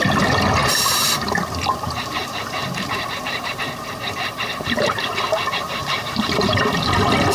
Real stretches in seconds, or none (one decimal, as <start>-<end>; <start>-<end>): 0.0-0.6; 5.0-5.8; 6.6-7.3